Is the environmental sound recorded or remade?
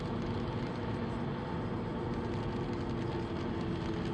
recorded